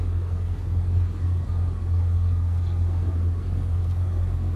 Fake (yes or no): yes